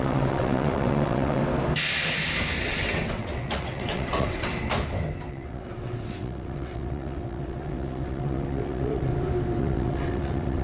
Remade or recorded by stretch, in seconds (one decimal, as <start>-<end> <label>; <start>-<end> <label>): 0.0-1.4 remade; 1.4-2.6 recorded; 2.6-4.5 remade; 4.5-5.3 recorded; 5.3-9.1 remade; 9.1-9.6 recorded; 9.6-10.6 remade